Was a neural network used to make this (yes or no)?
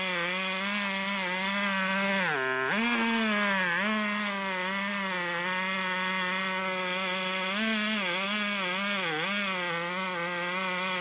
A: no